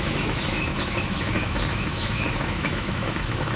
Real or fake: fake